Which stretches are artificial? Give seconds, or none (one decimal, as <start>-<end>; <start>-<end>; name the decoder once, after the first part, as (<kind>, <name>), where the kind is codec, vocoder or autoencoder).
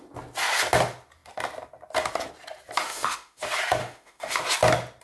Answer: 2.8-3.4 (autoencoder, DAC-VAE); 3.8-4.4